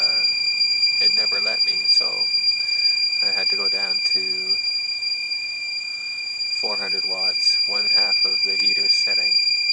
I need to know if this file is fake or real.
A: fake